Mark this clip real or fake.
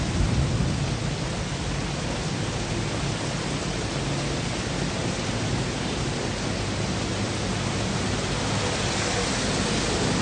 real